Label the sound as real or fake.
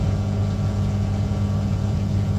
fake